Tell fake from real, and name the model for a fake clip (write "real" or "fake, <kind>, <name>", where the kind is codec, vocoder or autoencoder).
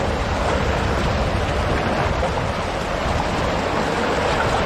real